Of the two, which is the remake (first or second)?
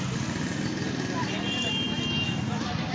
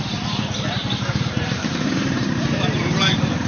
second